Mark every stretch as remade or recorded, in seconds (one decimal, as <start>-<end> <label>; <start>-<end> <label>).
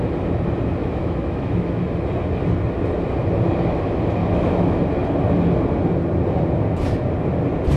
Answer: 0.0-0.8 recorded; 0.8-1.8 remade; 1.8-4.2 recorded; 4.2-4.8 remade; 4.8-7.8 recorded